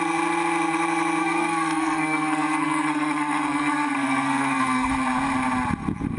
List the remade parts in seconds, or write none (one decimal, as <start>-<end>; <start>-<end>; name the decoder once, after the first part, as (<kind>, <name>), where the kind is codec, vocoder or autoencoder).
1.2-4.9 (codec, SNAC)